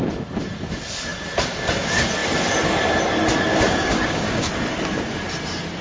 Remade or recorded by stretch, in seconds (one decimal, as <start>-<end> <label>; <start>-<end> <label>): 0.0-3.5 recorded; 3.5-4.5 remade; 4.5-5.8 recorded